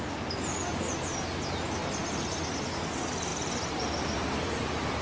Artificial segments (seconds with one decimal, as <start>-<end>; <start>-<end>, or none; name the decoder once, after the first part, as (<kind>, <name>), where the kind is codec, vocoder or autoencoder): 1.8-2.6 (vocoder, BigVGAN v2); 3.3-5.0